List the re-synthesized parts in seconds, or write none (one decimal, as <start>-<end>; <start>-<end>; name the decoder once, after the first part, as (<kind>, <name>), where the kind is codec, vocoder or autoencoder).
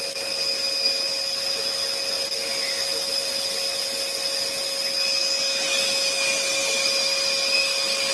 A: none